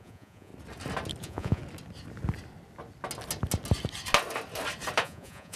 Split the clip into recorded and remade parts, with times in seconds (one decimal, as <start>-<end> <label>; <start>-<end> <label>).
0.0-0.5 remade; 0.5-1.2 recorded; 1.2-1.6 remade; 1.6-5.0 recorded; 5.0-5.6 remade